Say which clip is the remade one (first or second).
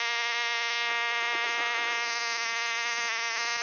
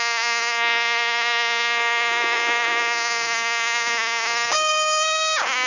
second